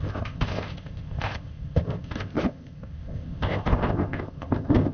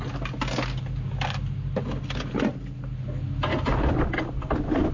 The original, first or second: second